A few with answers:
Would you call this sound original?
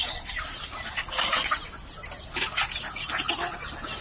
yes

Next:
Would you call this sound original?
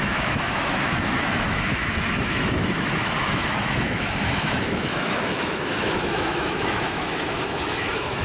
no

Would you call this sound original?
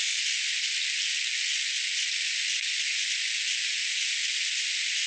yes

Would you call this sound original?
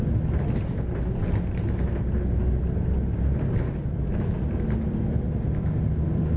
yes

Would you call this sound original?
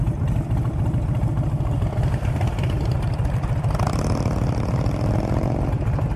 yes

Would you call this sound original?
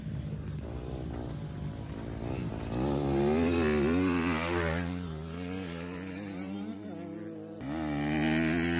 yes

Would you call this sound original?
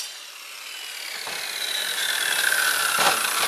yes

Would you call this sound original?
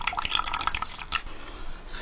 yes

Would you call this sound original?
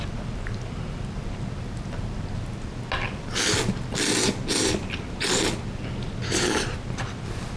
yes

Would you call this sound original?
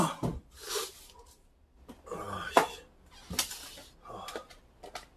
yes